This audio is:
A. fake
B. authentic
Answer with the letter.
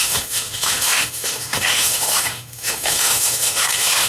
A